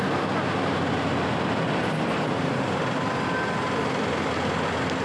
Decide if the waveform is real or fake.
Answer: real